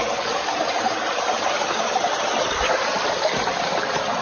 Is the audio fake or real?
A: real